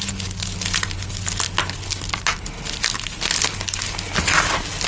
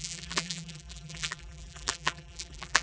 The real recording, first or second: first